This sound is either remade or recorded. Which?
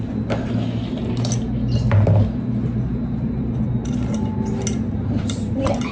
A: recorded